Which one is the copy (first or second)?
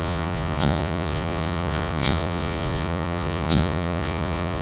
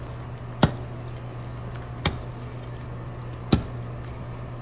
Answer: first